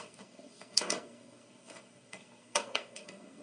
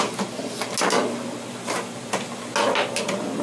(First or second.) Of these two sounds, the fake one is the first